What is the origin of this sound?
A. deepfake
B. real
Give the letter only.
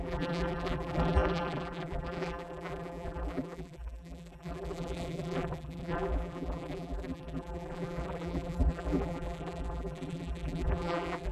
A